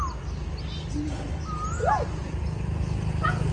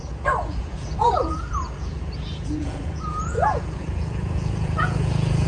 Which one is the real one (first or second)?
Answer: first